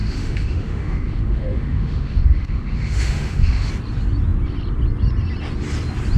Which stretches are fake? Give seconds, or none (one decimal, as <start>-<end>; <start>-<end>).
0.0-3.7